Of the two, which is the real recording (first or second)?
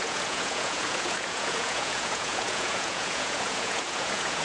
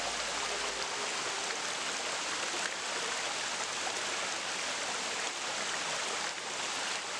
second